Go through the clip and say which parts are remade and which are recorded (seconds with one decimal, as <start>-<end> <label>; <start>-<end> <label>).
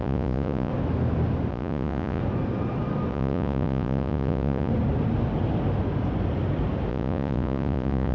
0.0-0.7 remade; 0.7-1.5 recorded; 1.5-2.2 remade; 2.2-3.1 recorded; 3.1-4.7 remade; 4.7-6.9 recorded; 6.9-8.1 remade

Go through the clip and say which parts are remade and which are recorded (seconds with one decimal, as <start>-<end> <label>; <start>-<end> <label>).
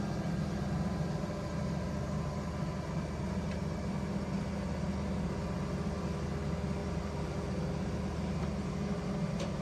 0.0-9.6 recorded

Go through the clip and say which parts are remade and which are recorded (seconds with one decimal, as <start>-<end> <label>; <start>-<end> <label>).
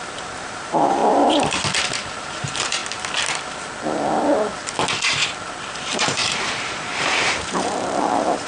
0.0-1.0 remade; 1.0-2.2 recorded; 2.2-2.8 remade; 2.8-5.7 recorded; 5.7-8.5 remade